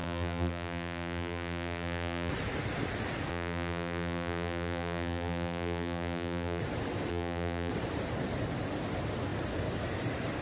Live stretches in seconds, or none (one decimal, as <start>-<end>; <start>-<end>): 2.3-3.3; 6.6-7.1; 7.7-10.4